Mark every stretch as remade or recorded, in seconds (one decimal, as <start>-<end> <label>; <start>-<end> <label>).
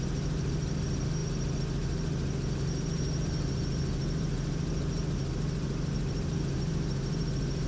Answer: 0.0-7.7 recorded